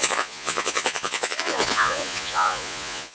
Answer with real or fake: fake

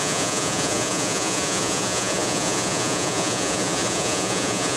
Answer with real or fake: fake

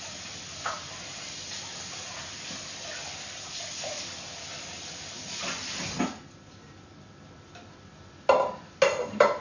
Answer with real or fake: real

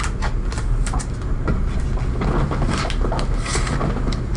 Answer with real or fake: real